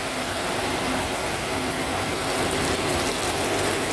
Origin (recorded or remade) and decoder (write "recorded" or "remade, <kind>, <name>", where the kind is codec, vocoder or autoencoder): recorded